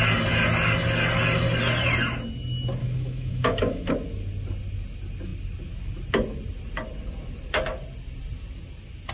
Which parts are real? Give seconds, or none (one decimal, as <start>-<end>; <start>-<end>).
0.0-2.8; 3.9-9.1